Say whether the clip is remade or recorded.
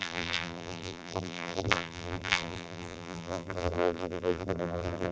remade